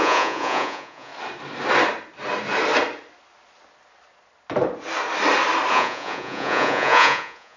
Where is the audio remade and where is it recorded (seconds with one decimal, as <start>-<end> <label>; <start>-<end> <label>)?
0.0-1.1 remade; 1.1-5.7 recorded; 5.7-7.6 remade